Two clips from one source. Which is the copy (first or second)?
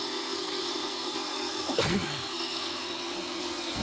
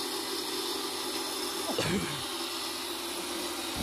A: first